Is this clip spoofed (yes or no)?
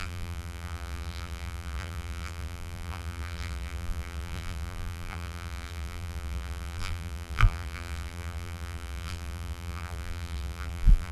yes